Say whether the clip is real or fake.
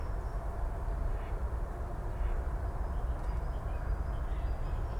real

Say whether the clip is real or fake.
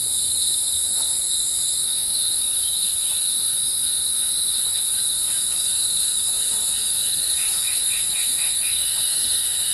fake